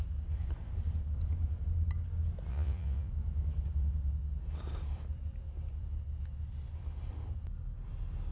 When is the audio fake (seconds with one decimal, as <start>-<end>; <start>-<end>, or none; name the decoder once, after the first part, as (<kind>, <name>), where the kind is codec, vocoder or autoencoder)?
2.5-3.1 (vocoder, Vocos)